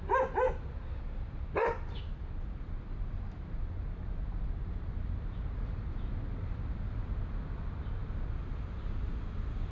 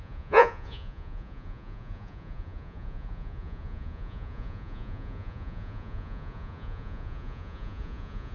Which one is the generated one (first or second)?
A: second